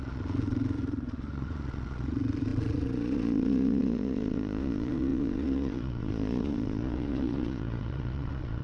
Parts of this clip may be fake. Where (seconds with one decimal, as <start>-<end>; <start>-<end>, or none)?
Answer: 0.0-8.6

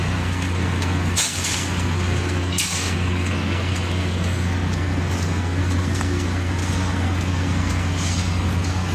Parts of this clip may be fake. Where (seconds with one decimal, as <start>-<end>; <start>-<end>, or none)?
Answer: 0.0-8.9

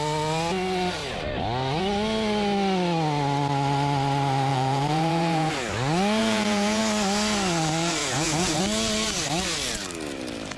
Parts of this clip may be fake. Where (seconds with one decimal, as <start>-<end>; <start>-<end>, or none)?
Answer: 4.5-5.5; 6.2-6.8; 8.0-8.6

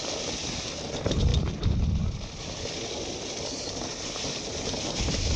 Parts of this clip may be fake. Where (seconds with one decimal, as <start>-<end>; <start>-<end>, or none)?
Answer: 1.3-4.5